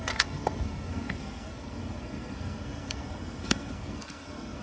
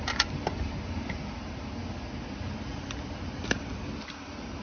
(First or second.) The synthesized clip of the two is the first